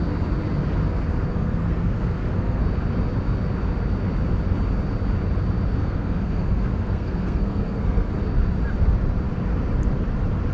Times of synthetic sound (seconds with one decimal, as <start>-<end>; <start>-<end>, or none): 1.3-2.6; 5.8-8.1